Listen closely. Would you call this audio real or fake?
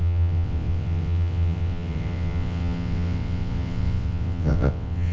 fake